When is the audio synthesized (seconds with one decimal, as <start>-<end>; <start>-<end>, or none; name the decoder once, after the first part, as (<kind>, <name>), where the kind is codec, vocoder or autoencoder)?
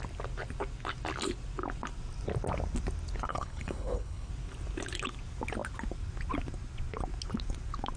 3.3-4.3 (codec, HILCodec)